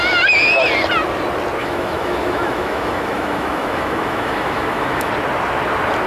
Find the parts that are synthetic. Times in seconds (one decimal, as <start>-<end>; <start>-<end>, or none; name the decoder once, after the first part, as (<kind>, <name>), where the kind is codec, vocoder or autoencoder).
1.6-5.1 (autoencoder, DAC-VAE)